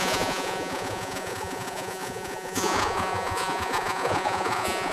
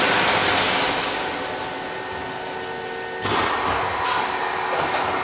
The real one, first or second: second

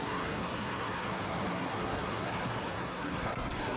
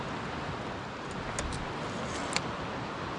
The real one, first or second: second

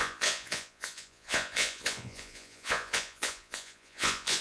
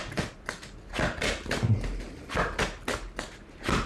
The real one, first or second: second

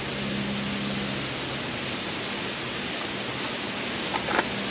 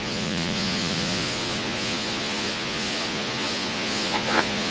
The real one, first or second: first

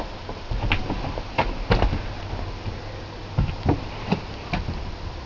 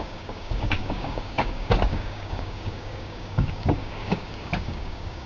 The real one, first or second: first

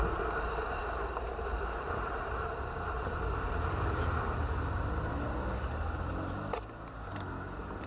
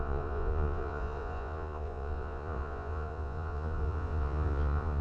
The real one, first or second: first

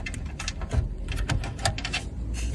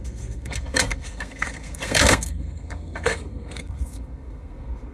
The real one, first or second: first